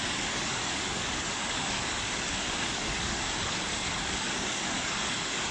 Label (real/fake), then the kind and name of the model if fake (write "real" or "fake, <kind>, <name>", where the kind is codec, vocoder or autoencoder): fake, codec, DAC